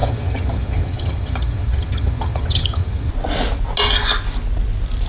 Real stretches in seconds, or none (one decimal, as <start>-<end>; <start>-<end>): 3.1-5.1